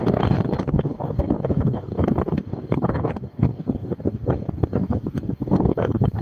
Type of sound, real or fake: fake